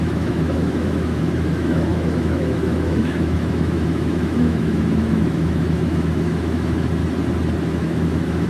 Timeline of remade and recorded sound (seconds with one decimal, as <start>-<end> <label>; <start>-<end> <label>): 0.0-7.0 remade; 7.0-7.6 recorded; 7.6-8.5 remade